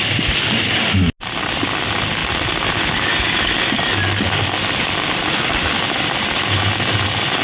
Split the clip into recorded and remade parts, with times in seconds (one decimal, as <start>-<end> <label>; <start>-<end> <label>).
0.0-7.4 recorded